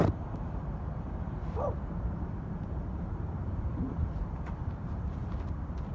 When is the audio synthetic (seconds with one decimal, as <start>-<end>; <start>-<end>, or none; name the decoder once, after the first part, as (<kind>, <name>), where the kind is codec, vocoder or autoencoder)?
0.0-5.9 (vocoder, BigVGAN v2)